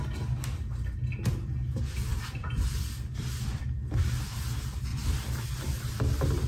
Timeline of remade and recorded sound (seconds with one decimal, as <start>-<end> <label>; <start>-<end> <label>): 0.0-2.1 recorded; 2.1-3.9 remade; 3.9-4.9 recorded; 4.9-6.5 remade